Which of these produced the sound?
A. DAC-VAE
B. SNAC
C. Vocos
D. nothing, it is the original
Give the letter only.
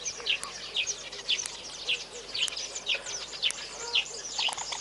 D